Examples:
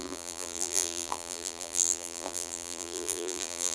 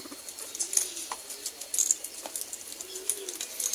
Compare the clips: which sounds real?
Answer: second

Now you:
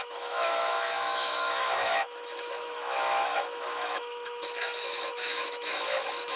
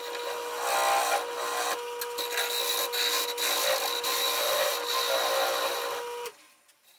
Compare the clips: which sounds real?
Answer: second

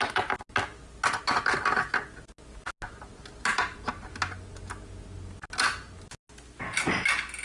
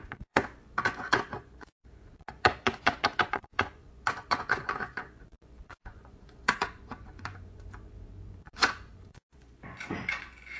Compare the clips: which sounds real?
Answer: first